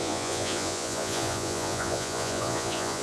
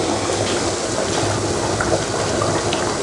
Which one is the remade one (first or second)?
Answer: first